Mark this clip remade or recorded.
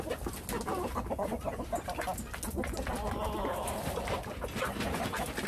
recorded